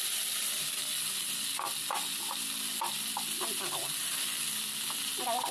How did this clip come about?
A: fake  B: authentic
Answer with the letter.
B